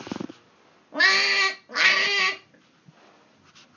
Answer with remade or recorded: recorded